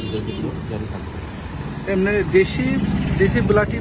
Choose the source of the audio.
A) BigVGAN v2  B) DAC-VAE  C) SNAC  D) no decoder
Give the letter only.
D